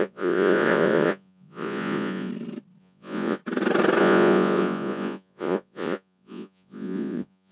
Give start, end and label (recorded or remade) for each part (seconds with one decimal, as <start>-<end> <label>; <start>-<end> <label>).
0.0-2.3 remade; 2.3-2.8 recorded; 2.8-3.4 remade; 3.4-4.0 recorded; 4.0-7.5 remade